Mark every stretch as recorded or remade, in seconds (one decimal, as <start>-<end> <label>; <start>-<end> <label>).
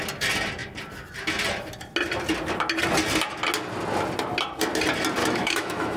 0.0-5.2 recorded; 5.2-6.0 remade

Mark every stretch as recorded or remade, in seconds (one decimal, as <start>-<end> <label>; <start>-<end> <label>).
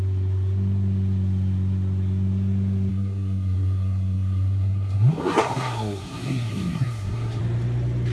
0.0-2.9 recorded; 2.9-7.4 remade; 7.4-8.1 recorded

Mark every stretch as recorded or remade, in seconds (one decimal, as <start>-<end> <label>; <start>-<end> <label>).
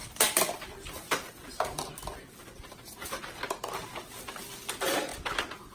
0.0-3.4 remade; 3.4-5.7 recorded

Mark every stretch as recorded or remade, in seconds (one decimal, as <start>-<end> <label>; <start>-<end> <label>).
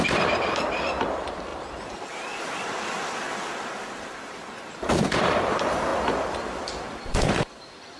0.0-8.0 remade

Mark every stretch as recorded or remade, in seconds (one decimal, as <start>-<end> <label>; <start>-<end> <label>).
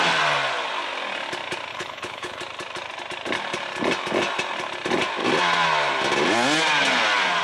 0.0-1.7 recorded; 1.7-2.4 remade; 2.4-7.4 recorded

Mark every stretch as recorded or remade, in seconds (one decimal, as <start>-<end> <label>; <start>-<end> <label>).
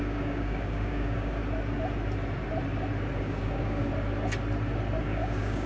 0.0-1.4 remade; 1.4-3.2 recorded; 3.2-3.9 remade; 3.9-5.0 recorded; 5.0-5.7 remade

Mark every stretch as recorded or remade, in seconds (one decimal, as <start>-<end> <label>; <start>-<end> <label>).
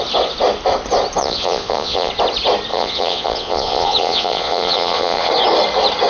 0.0-1.2 recorded; 1.2-2.1 remade; 2.1-2.7 recorded; 2.7-5.3 remade; 5.3-6.1 recorded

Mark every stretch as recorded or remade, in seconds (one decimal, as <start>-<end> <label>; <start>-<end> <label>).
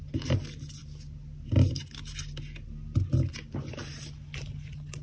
0.0-5.0 recorded